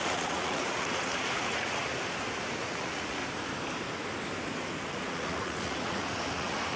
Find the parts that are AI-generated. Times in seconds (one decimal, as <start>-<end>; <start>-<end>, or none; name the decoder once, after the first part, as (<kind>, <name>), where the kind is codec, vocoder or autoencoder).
0.0-1.9 (vocoder, Vocos); 2.6-3.2; 4.8-6.8